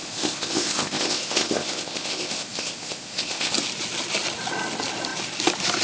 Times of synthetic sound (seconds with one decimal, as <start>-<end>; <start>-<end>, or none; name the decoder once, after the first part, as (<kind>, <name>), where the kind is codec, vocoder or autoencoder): 0.0-3.5 (codec, ZipCodec)